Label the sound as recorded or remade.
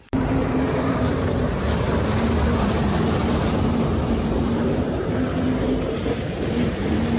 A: remade